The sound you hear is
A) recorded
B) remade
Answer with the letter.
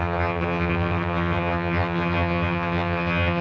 B